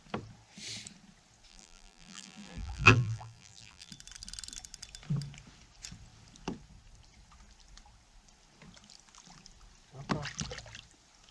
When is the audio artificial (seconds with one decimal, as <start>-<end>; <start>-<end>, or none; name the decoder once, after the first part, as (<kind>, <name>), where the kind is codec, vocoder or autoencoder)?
1.5-3.9 (vocoder, BigVGAN v2)